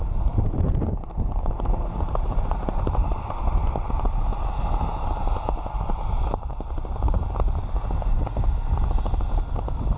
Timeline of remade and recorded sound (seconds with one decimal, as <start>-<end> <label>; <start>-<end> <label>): 0.0-3.6 remade; 3.6-6.2 recorded; 6.2-7.2 remade; 7.2-10.0 recorded

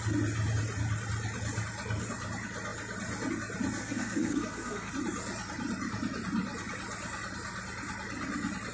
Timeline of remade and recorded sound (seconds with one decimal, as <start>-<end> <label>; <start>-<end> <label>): 0.0-3.8 recorded; 3.8-4.9 remade; 4.9-8.7 recorded

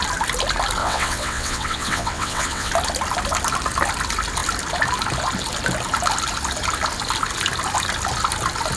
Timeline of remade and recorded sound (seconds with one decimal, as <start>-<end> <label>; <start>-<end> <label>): 0.0-0.8 recorded; 0.8-2.7 remade; 2.7-8.8 recorded

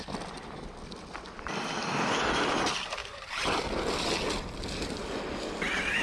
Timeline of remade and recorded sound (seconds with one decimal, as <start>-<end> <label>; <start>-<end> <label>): 0.0-6.0 recorded

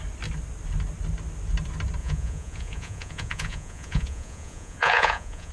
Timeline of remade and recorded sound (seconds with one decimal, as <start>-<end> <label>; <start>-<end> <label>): 0.0-2.0 recorded; 2.0-5.5 remade

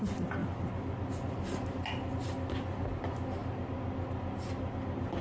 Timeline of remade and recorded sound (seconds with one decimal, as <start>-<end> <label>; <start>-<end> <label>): 0.0-5.2 recorded

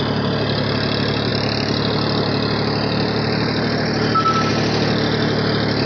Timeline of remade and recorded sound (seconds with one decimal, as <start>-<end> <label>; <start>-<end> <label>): 0.0-5.9 recorded